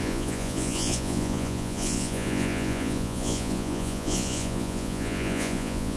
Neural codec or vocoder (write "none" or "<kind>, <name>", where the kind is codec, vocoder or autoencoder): vocoder, Vocos